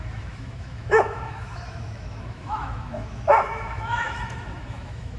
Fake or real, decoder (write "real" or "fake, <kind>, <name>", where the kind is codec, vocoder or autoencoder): fake, autoencoder, DAC-VAE